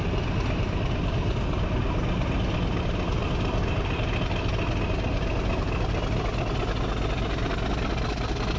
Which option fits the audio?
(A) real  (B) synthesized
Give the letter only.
A